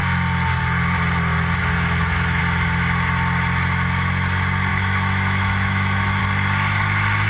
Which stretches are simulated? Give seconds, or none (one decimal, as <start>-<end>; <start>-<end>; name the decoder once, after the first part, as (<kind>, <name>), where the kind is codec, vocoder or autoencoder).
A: 1.6-2.4 (autoencoder, DAC-VAE); 4.7-6.2